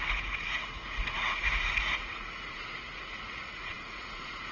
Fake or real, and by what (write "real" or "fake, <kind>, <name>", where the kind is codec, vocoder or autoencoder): fake, vocoder, Vocos